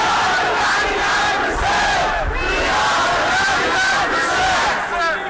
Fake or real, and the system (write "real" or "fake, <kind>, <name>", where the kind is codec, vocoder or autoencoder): real